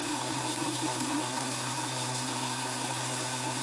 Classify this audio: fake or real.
fake